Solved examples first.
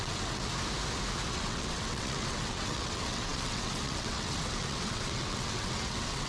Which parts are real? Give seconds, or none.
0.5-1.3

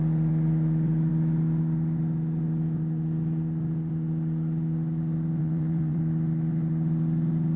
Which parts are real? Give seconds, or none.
0.0-5.4; 6.0-7.6